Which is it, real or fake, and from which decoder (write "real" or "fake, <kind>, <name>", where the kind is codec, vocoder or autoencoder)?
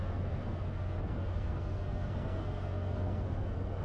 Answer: fake, codec, SNAC